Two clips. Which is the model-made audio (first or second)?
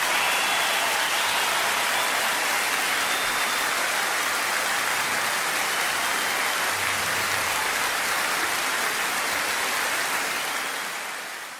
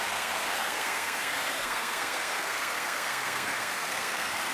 second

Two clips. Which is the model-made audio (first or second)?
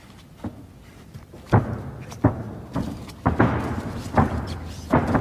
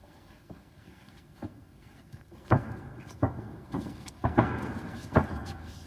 second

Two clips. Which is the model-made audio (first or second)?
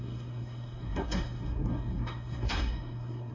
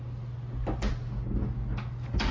first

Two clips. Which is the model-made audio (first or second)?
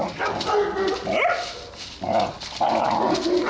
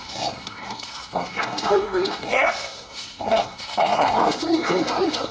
second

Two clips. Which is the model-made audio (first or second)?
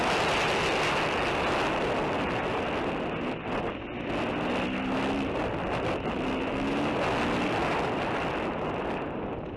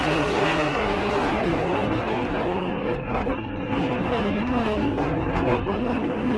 second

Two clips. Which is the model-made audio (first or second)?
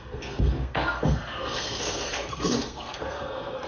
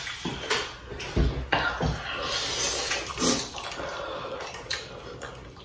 first